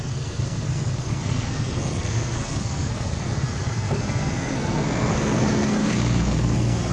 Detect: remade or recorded remade